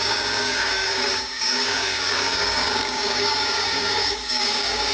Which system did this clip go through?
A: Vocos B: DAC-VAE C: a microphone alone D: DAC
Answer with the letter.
D